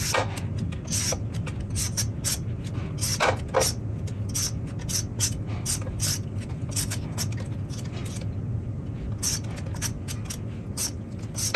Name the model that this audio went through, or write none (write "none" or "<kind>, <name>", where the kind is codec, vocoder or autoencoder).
none